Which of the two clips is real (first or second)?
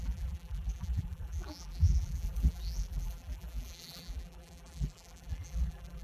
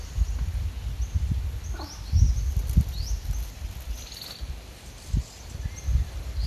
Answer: second